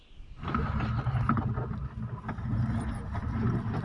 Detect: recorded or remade recorded